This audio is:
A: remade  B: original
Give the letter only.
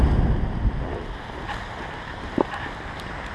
B